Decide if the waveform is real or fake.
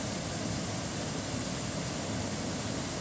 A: real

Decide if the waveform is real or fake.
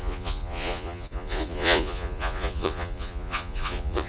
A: fake